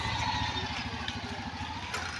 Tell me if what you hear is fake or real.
real